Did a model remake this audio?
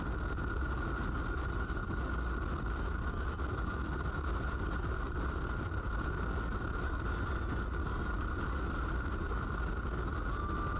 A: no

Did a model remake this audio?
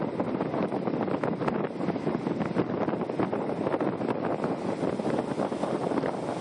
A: no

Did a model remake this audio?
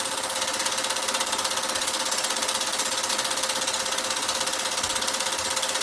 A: no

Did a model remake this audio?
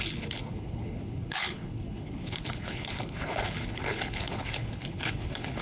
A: yes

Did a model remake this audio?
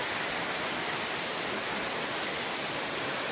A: no